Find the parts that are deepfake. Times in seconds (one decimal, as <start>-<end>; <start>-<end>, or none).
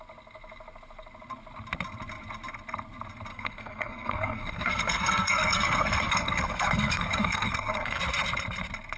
3.3-8.0